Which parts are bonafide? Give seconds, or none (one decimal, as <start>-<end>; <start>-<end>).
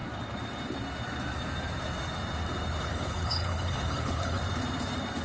0.0-2.9; 4.4-5.2